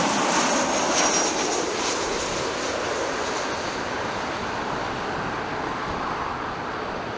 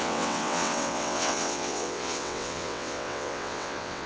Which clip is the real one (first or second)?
first